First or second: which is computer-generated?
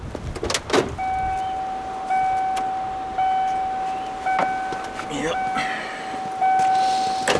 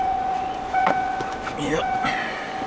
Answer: second